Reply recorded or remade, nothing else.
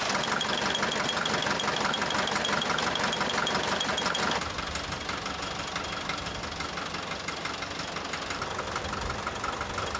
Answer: recorded